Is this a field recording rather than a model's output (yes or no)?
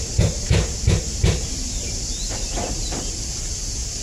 yes